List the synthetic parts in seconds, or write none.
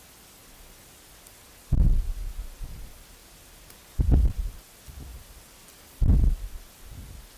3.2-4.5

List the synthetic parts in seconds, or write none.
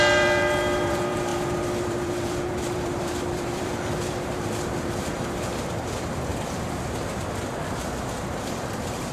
0.0-6.3; 8.3-9.1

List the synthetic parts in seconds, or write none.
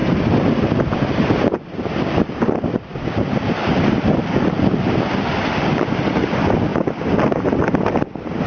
0.0-1.1; 2.9-6.1